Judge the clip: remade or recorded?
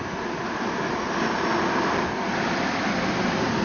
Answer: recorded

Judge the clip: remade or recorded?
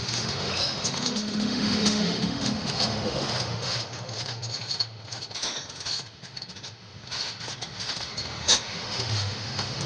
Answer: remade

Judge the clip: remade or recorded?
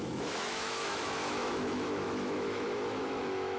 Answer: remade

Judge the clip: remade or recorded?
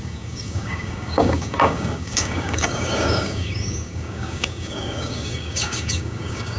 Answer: remade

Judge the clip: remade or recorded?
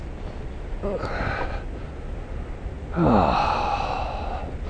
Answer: recorded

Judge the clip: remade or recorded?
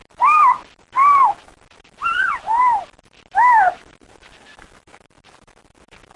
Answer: recorded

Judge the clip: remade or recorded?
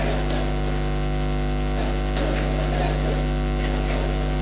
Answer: recorded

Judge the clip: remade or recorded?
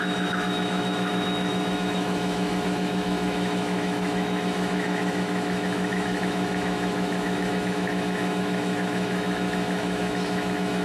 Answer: remade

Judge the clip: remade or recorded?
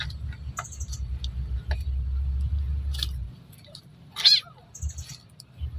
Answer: recorded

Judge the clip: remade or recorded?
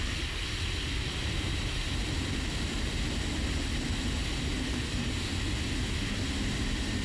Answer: recorded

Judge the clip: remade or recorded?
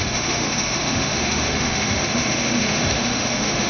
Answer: remade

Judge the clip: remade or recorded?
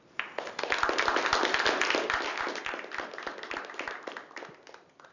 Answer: recorded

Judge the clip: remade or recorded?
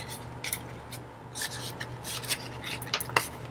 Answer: recorded